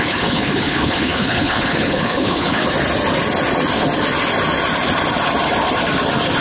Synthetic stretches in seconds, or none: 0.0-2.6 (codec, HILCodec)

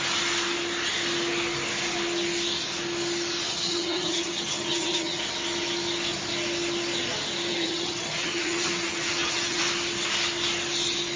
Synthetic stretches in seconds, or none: 3.5-5.2 (vocoder, HiFi-GAN); 7.5-9.6